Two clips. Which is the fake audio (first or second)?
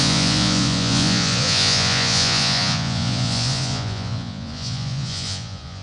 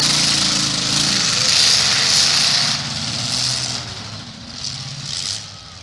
first